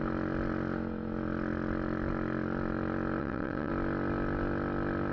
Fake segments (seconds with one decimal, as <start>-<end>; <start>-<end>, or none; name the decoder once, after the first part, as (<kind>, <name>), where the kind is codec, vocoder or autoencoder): 3.2-3.7 (vocoder, WaveNeXt)